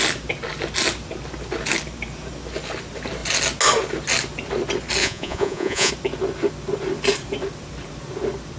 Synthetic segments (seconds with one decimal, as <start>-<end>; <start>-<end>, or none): 5.0-5.9